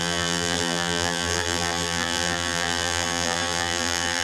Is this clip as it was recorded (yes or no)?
no